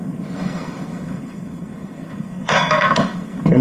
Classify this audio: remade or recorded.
remade